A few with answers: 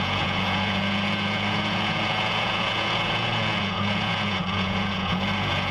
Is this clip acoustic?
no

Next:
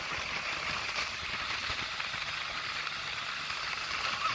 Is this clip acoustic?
yes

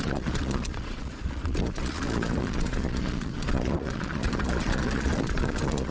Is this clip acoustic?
no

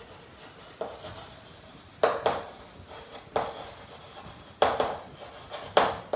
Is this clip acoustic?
yes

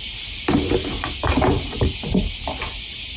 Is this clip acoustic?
yes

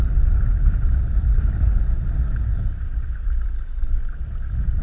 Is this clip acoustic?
yes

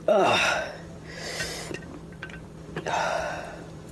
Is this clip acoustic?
no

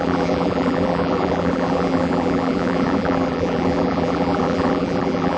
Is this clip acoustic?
no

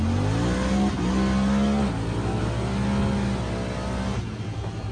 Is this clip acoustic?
yes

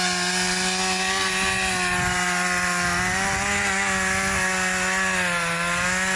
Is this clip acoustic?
yes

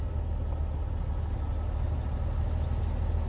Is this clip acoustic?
yes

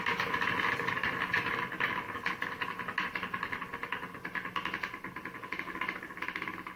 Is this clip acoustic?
yes